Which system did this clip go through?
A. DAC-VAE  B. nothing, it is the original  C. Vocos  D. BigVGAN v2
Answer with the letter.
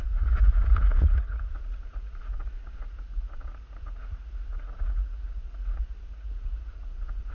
C